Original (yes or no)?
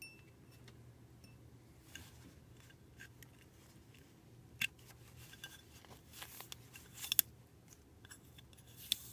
yes